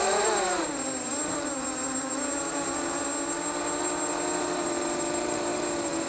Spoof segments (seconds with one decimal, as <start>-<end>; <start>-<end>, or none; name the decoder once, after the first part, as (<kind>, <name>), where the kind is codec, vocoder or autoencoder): 0.0-0.7 (vocoder, BigVGAN v2); 4.4-6.1